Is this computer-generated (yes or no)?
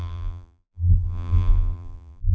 yes